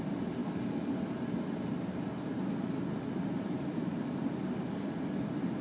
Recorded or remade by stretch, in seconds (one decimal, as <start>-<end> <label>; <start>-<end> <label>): 0.0-5.6 recorded